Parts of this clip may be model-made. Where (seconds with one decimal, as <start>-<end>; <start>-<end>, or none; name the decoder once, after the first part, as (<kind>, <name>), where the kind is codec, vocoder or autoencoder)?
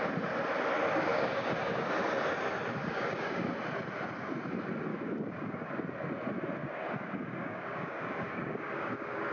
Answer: 1.1-1.9 (codec, DAC); 2.8-3.4; 4.9-5.7; 6.6-9.3